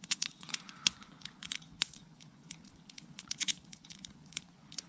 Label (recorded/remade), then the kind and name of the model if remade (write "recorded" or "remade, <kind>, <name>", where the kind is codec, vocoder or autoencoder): remade, vocoder, Vocos